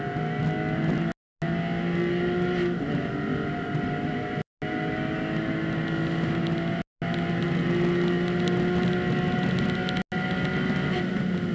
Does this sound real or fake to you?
real